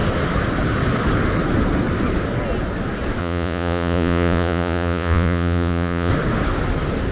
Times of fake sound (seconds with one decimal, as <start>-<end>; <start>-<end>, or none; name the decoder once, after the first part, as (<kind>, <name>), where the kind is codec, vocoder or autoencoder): 3.2-6.1 (vocoder, Vocos)